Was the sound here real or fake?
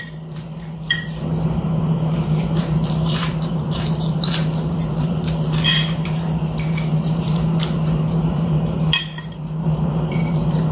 fake